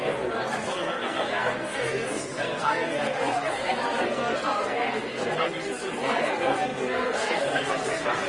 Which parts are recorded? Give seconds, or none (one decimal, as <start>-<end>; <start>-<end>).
none